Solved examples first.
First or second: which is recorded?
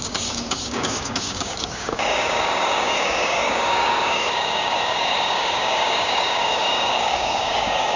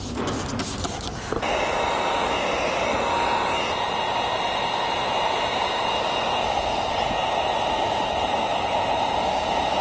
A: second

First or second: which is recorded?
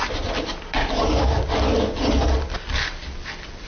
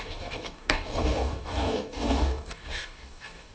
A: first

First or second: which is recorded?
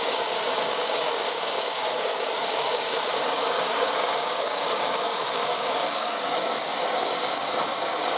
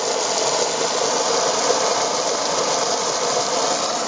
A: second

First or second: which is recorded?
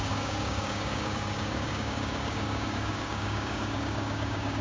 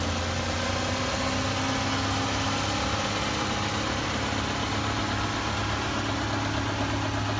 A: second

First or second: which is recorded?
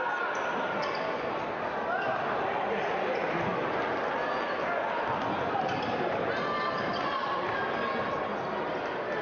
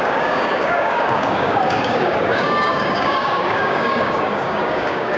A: first